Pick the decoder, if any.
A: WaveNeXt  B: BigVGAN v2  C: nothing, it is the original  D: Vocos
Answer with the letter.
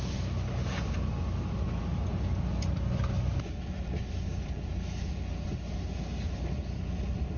C